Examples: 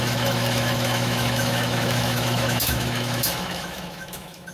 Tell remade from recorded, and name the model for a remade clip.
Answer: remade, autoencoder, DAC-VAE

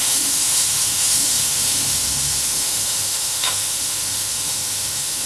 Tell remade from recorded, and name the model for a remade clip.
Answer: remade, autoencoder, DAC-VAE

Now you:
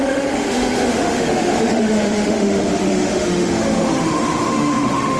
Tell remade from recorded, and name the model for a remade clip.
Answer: remade, autoencoder, DAC-VAE